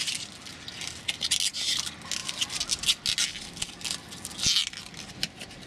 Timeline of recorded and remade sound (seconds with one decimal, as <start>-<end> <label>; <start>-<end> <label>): 0.0-5.7 recorded